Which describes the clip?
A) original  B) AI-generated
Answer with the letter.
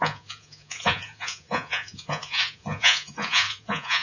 B